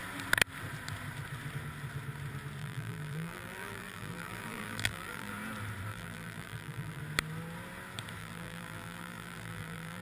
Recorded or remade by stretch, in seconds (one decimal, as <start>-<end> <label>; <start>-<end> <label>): 0.0-2.6 recorded; 2.6-5.3 remade; 5.3-5.9 recorded; 5.9-7.0 remade; 7.0-8.2 recorded; 8.2-10.0 remade

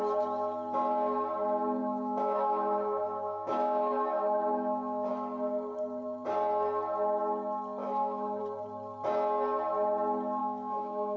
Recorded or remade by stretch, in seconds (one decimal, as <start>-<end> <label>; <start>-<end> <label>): 0.0-1.8 recorded; 1.8-5.1 remade; 5.1-7.8 recorded; 7.8-8.4 remade; 8.4-10.4 recorded; 10.4-11.2 remade